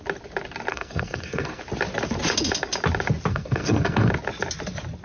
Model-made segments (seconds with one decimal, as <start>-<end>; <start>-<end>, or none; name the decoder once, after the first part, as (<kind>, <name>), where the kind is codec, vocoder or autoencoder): 0.7-1.6 (codec, SNAC); 3.3-4.1